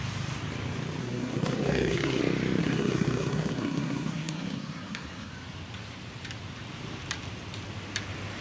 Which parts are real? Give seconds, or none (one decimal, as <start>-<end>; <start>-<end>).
0.0-1.0; 2.2-2.6; 5.3-8.4